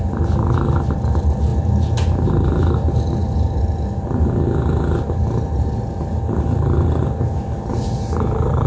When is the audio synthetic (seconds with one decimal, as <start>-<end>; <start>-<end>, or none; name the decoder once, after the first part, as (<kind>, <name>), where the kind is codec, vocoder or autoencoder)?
none